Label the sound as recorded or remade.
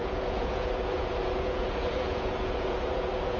remade